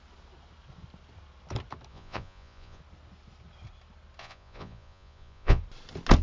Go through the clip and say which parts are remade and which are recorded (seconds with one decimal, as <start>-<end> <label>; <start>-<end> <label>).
0.0-1.9 recorded; 1.9-2.8 remade; 2.8-4.2 recorded; 4.2-5.6 remade; 5.6-6.2 recorded